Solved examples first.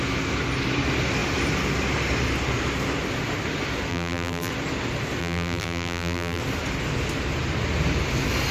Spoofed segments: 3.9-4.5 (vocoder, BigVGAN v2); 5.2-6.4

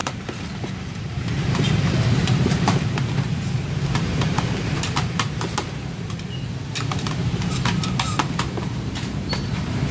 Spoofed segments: 0.0-9.9 (vocoder, BigVGAN v2)